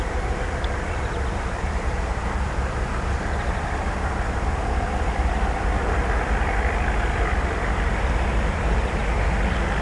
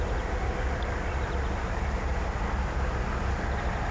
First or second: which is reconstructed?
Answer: first